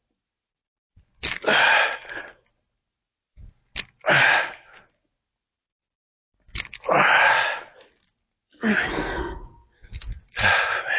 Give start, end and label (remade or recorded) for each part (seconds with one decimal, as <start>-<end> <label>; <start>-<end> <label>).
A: 0.0-8.7 recorded; 8.7-10.1 remade; 10.1-11.0 recorded